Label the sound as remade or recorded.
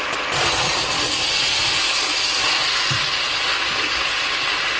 recorded